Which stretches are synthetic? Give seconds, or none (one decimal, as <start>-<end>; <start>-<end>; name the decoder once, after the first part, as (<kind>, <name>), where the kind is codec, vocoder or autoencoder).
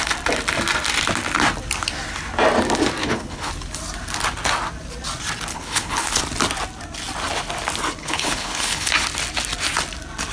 3.0-3.5 (codec, HILCodec); 5.5-6.2; 8.0-8.9